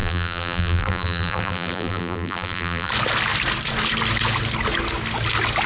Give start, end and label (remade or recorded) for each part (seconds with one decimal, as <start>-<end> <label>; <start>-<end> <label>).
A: 0.0-2.9 remade; 2.9-5.7 recorded